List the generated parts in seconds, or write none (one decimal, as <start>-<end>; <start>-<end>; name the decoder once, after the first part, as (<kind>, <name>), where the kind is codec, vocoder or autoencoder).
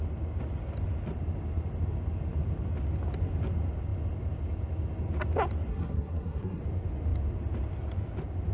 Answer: 5.7-6.6 (codec, SNAC)